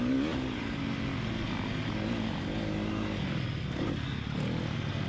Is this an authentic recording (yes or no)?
yes